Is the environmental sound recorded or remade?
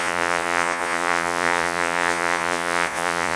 remade